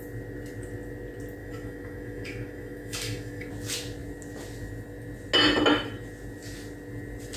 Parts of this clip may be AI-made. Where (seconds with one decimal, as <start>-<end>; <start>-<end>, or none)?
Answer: 1.4-3.5